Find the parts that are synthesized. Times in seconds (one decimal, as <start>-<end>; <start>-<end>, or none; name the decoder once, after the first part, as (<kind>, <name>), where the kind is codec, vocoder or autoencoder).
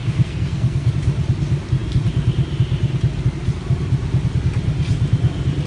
0.0-0.9 (codec, SNAC)